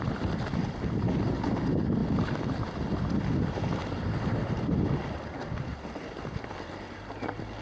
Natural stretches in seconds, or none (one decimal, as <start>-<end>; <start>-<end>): 2.0-3.0